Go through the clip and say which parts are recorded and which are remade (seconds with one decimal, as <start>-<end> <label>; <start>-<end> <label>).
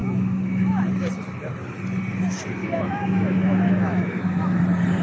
0.0-0.8 remade; 0.8-2.6 recorded; 2.6-4.6 remade; 4.6-5.0 recorded